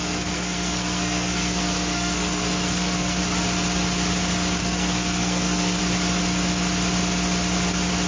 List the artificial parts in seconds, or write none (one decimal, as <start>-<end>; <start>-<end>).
0.0-3.2; 4.6-5.8